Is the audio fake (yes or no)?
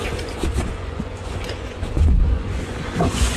yes